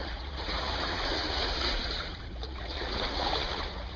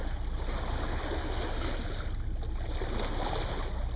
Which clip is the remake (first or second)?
first